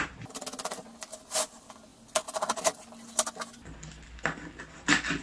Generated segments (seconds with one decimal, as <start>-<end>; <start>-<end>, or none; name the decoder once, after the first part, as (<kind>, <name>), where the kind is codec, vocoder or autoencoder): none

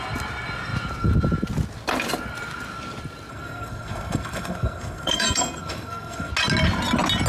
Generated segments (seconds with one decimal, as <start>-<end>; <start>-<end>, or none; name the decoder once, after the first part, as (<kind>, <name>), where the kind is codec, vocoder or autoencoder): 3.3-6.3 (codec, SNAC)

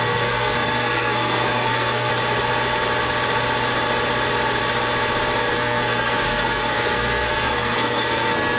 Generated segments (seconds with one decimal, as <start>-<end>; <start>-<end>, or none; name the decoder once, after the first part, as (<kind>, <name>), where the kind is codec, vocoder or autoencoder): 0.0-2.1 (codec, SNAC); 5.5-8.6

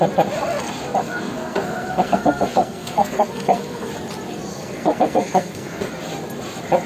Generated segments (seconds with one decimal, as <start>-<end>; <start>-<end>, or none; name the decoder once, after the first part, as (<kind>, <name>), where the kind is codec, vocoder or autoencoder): 1.0-3.9 (codec, SNAC); 4.5-5.9

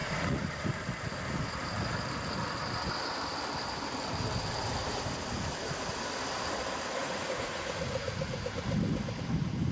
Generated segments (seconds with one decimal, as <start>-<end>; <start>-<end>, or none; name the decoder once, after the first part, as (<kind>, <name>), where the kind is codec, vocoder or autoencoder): 0.0-0.5 (vocoder, Vocos); 7.0-8.4